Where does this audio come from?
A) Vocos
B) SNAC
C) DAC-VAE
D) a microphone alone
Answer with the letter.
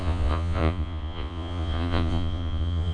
A